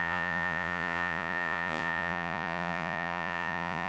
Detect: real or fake fake